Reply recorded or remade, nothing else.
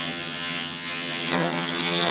remade